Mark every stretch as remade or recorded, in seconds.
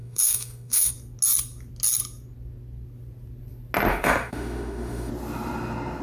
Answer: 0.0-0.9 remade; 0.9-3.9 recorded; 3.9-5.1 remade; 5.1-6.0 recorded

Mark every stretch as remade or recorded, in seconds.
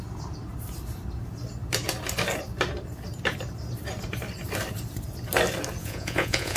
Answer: 0.0-5.8 recorded; 5.8-6.6 remade